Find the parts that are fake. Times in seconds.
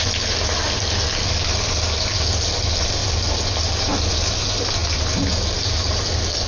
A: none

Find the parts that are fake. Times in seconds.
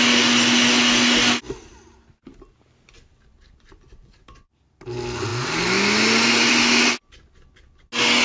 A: none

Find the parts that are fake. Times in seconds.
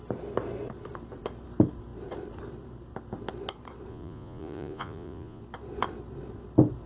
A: 3.9-5.4 (vocoder, Vocos)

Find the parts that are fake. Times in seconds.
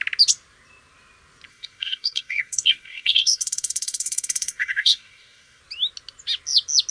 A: 1.5-5.6 (codec, SNAC)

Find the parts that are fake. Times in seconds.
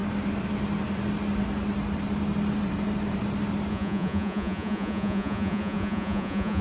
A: 3.7-6.6 (vocoder, Vocos)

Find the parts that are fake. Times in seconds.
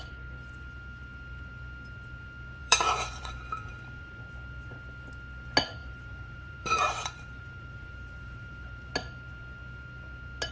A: 2.6-4.2 (vocoder, BigVGAN v2); 5.8-8.9